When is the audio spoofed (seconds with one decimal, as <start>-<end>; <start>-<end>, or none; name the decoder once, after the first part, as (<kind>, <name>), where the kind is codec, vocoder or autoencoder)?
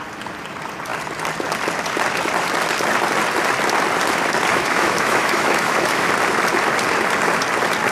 4.5-6.1 (autoencoder, DAC-VAE)